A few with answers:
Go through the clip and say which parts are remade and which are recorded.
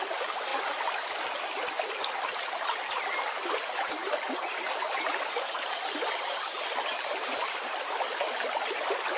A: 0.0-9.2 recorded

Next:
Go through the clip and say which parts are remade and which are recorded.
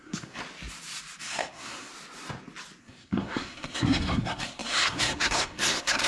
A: 0.0-0.4 remade; 0.4-1.2 recorded; 1.2-1.9 remade; 1.9-2.8 recorded; 2.8-6.1 remade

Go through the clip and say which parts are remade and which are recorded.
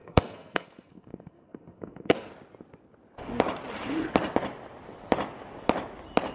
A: 0.0-2.3 remade; 2.3-6.3 recorded